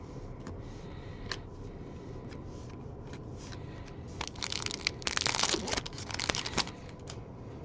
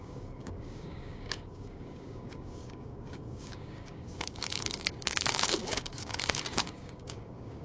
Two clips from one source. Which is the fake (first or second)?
second